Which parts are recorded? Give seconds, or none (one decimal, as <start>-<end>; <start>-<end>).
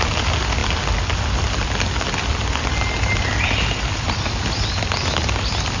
0.0-5.8